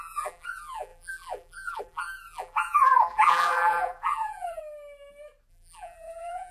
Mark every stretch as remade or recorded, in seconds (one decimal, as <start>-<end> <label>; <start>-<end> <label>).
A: 0.0-4.6 remade; 4.6-5.5 recorded; 5.5-6.5 remade